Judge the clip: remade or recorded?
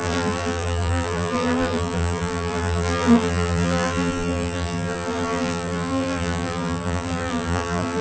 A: remade